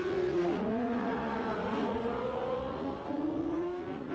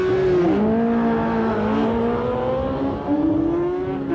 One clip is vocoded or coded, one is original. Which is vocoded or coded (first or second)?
first